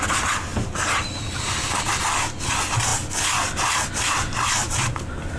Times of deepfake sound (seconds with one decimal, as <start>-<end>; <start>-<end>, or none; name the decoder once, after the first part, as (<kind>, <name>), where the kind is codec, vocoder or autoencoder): none

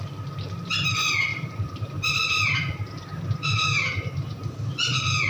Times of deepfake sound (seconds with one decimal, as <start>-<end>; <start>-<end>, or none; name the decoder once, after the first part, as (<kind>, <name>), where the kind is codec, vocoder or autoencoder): 1.3-4.5 (vocoder, BigVGAN v2)

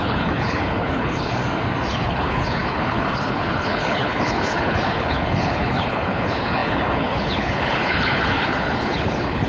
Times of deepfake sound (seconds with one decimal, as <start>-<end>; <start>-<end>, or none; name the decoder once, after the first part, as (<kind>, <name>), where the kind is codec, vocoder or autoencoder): 0.0-1.4 (codec, HILCodec); 1.9-9.5

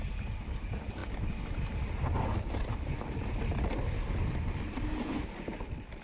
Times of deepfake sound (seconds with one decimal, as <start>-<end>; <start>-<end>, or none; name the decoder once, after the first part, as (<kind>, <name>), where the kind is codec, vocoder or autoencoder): none

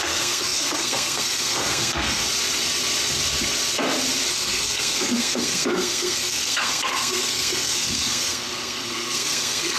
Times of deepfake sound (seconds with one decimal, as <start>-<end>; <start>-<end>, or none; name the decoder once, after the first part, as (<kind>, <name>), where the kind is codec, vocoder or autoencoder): 0.0-2.2 (codec, SNAC); 4.3-9.8